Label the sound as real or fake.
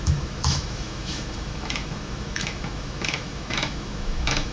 fake